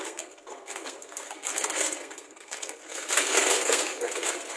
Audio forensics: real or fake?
fake